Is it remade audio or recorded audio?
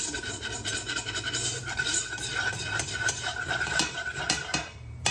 remade